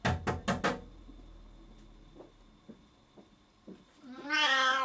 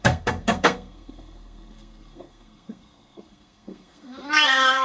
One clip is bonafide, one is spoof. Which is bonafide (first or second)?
first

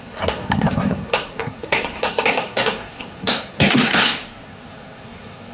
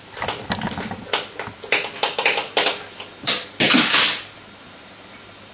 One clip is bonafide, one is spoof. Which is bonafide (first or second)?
second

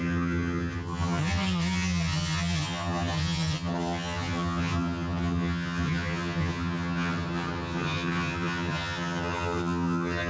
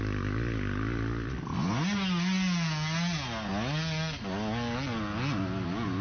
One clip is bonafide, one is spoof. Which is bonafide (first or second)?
second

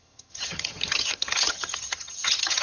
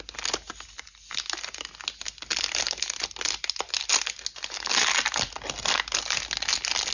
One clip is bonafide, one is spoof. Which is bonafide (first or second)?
second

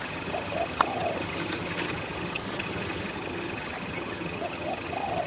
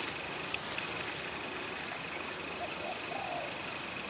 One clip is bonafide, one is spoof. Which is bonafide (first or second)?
second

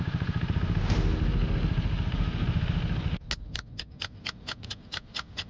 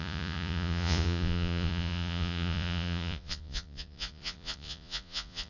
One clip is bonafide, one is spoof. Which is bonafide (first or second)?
first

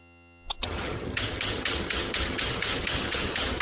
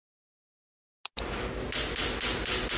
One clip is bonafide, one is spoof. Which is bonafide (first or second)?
second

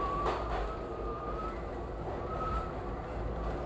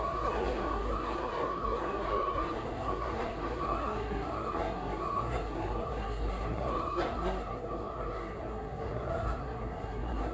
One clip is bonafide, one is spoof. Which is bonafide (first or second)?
first